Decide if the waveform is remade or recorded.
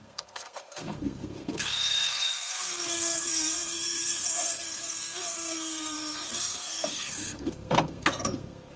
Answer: remade